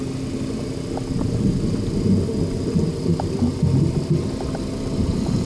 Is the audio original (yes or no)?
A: yes